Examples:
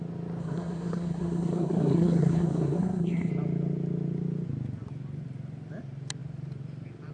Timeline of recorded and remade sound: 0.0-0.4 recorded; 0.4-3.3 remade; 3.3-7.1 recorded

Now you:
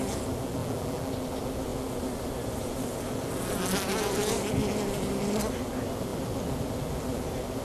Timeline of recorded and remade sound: 0.0-0.6 recorded; 0.6-1.1 remade; 1.1-7.6 recorded

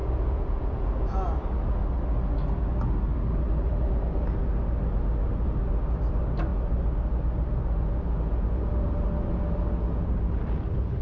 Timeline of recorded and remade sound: 0.0-0.9 remade; 0.9-11.0 recorded

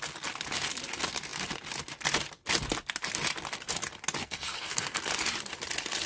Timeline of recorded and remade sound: 0.0-4.2 recorded; 4.2-5.0 remade; 5.0-6.1 recorded